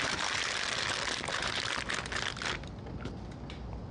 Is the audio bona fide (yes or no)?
yes